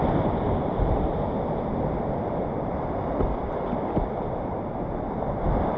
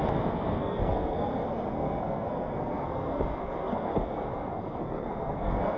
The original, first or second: first